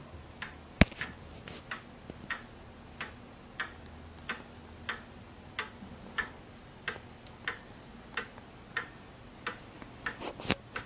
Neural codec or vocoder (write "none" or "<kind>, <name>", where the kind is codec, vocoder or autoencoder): none